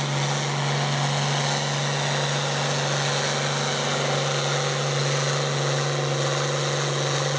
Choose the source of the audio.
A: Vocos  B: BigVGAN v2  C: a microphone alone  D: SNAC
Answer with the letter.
C